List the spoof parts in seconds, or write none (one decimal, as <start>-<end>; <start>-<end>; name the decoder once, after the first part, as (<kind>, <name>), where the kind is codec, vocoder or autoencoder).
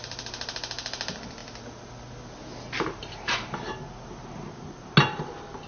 none